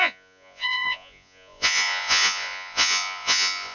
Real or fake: fake